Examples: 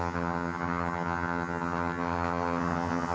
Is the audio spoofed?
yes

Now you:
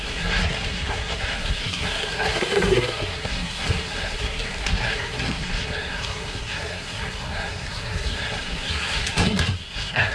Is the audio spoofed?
yes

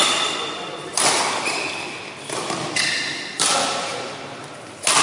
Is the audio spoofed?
no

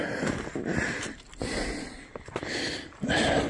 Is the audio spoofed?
no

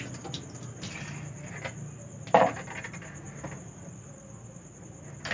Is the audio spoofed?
no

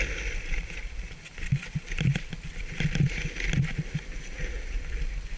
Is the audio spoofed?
no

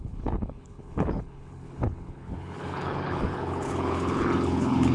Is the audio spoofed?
yes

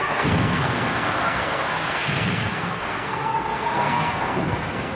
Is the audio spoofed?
yes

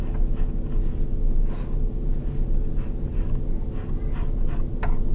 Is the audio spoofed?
no